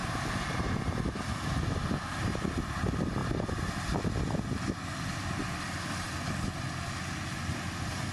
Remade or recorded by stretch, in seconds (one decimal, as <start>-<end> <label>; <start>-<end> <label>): 0.0-0.9 remade; 0.9-8.1 recorded